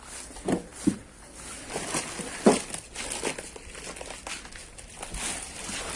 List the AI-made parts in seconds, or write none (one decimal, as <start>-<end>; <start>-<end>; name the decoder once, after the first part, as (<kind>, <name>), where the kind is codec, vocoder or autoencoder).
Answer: none